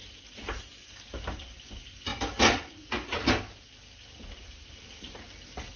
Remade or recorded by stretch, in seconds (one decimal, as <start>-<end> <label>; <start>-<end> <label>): 0.0-5.8 recorded